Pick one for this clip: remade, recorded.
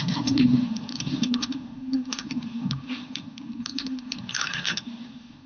remade